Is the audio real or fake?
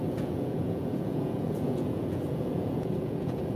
fake